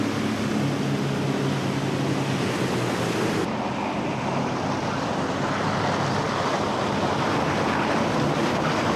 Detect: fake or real real